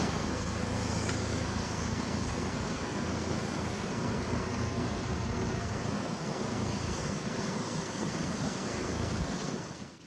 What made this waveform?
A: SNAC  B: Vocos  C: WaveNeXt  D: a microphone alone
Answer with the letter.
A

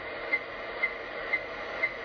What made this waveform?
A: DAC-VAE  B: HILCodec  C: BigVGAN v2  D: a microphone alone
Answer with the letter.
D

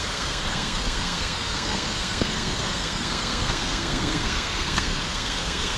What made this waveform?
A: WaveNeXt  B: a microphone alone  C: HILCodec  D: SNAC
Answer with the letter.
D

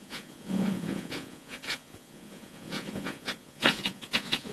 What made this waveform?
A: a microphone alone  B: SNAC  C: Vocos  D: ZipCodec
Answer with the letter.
C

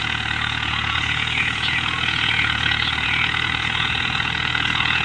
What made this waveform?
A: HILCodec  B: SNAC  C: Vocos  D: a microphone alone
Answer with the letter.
C